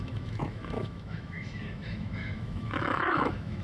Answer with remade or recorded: remade